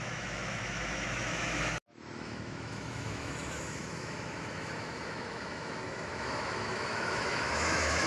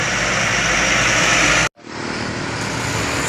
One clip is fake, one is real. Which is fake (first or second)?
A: first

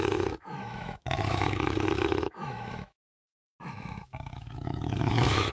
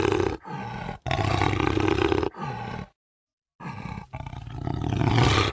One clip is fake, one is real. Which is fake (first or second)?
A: first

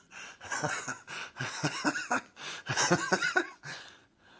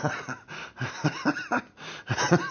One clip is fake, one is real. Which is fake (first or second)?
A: first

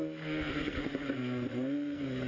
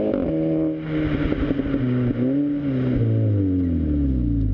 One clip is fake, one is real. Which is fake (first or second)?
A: first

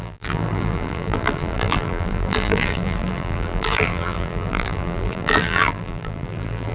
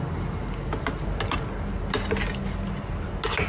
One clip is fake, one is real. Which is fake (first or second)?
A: first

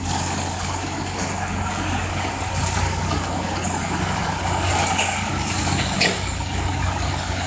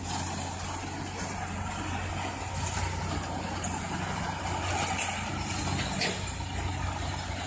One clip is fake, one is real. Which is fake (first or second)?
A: first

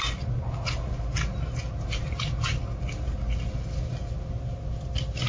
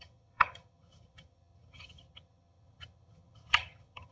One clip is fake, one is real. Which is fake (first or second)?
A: second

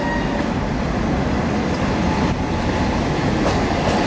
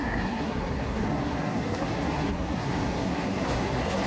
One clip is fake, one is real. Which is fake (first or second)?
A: second